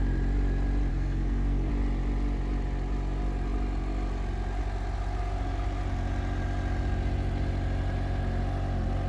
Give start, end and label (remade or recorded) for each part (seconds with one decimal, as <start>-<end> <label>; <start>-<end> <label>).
0.0-0.9 recorded; 0.9-1.7 remade; 1.7-9.1 recorded